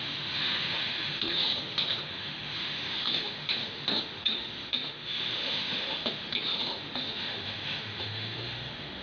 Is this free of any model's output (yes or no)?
no